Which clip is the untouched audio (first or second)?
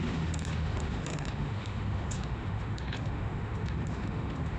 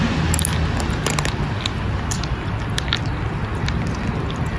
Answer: second